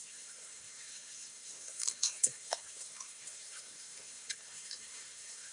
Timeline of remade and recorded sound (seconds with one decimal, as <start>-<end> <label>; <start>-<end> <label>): 0.0-5.5 remade